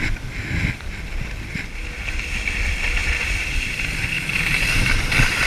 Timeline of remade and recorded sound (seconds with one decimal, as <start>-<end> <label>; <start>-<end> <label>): 0.0-3.0 recorded; 3.0-4.9 remade; 4.9-5.5 recorded